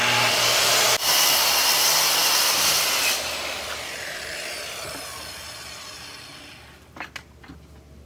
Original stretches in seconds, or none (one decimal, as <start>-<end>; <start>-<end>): 0.0-8.1